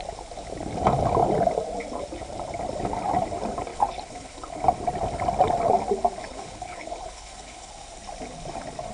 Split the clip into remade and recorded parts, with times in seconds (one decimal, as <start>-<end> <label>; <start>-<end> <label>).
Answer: 0.0-3.7 recorded; 3.7-4.6 remade; 4.6-6.2 recorded; 6.2-7.7 remade; 7.7-8.9 recorded